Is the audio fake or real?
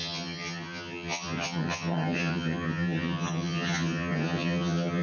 fake